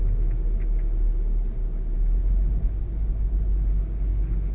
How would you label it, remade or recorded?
recorded